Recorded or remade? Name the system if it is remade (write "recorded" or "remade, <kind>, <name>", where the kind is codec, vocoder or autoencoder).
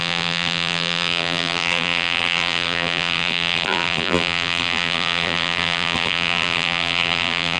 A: remade, vocoder, BigVGAN v2